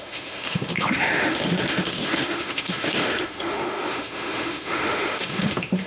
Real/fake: fake